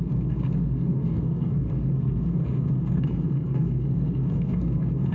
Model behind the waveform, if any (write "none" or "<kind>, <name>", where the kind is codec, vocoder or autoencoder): codec, SNAC